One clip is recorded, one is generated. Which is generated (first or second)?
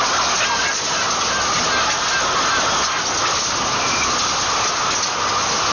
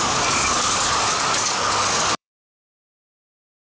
second